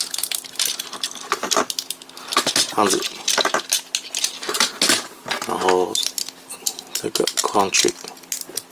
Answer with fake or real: real